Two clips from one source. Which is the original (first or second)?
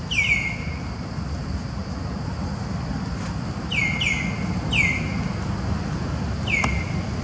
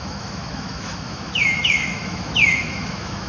first